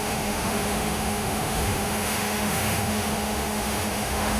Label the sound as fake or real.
fake